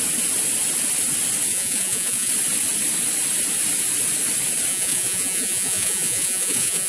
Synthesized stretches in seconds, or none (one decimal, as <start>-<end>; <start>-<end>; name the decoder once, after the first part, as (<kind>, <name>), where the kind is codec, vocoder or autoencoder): 1.5-2.3 (vocoder, Vocos); 4.7-6.9